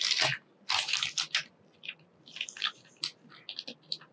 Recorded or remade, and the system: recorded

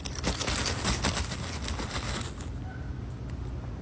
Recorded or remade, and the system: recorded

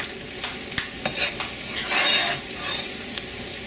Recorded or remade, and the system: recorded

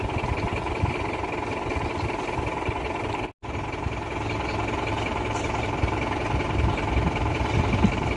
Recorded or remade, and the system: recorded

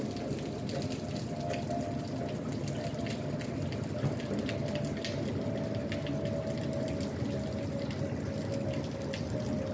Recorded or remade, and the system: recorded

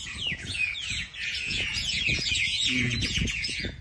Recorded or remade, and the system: remade, vocoder, Vocos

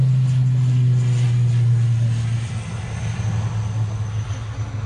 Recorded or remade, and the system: recorded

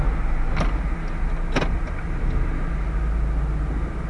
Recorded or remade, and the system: recorded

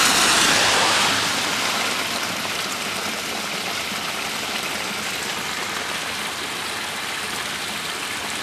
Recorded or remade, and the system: recorded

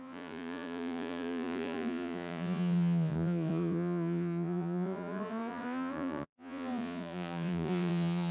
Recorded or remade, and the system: remade, vocoder, Vocos